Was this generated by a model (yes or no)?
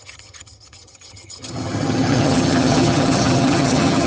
yes